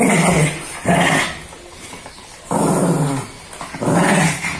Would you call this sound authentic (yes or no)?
yes